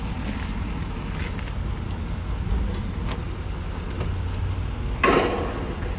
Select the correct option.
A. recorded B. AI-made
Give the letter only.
A